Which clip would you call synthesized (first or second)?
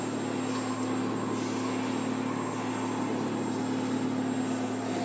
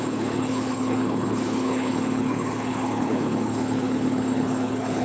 second